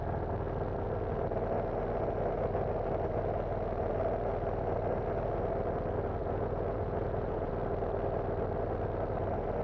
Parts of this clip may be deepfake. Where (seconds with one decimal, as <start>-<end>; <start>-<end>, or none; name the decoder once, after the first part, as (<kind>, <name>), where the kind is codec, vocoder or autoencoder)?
6.2-7.5 (vocoder, Vocos)